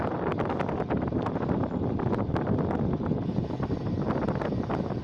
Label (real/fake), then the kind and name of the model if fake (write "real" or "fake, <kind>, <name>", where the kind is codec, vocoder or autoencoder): real